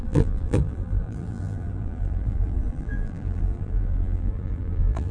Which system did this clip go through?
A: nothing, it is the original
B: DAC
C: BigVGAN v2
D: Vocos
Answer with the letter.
C